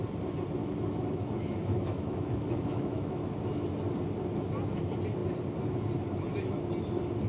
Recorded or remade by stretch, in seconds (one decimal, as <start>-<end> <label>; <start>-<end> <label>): 0.0-0.6 recorded; 0.6-3.3 remade; 3.3-7.3 recorded